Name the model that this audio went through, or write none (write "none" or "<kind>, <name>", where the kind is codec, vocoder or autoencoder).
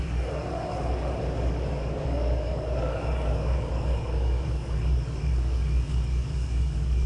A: codec, DAC